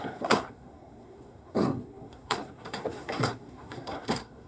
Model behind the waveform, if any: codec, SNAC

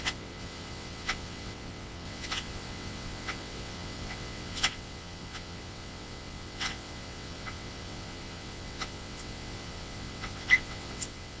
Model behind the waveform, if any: vocoder, WaveNeXt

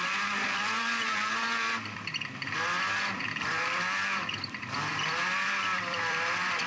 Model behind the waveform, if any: vocoder, BigVGAN v2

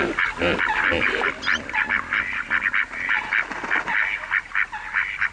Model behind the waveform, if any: none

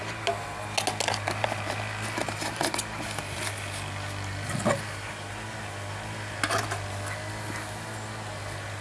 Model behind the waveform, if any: none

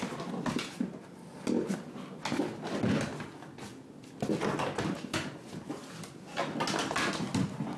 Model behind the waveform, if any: none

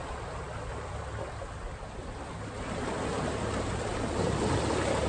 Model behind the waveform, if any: vocoder, BigVGAN v2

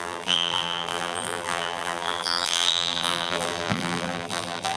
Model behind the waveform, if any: vocoder, BigVGAN v2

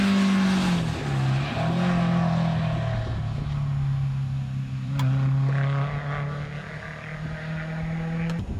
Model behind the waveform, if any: none